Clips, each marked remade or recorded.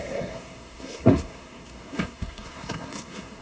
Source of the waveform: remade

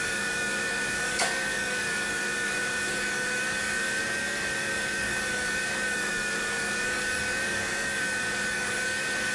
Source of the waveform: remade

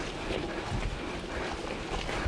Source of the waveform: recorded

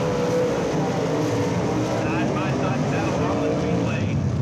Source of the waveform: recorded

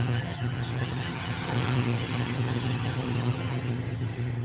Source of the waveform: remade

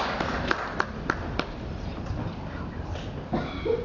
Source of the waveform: recorded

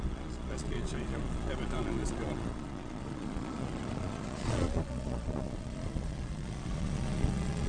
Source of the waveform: remade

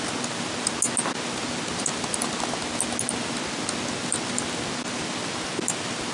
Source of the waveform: recorded